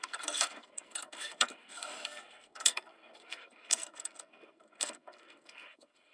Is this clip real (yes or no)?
no